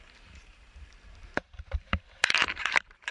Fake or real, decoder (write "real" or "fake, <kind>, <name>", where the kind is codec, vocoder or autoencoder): fake, vocoder, BigVGAN v2